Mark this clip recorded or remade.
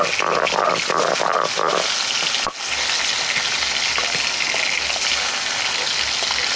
recorded